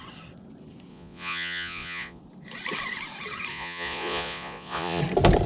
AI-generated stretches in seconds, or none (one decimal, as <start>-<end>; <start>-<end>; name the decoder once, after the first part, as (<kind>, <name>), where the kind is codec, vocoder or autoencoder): 0.9-2.2 (vocoder, Vocos); 3.5-5.0